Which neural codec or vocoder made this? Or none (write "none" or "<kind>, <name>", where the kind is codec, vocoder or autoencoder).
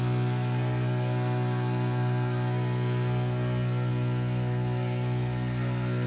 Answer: codec, SNAC